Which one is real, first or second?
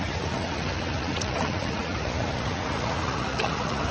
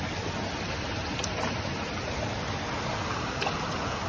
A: second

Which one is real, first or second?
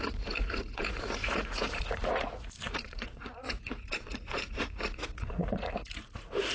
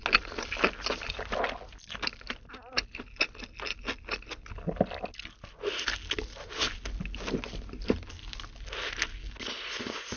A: second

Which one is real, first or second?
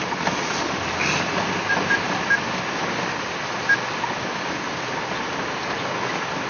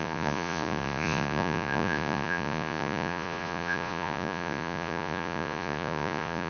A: first